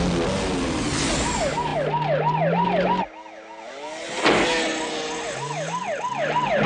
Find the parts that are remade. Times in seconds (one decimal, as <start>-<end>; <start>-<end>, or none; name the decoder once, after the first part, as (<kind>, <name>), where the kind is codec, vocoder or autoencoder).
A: none